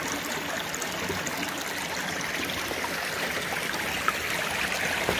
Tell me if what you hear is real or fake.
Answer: fake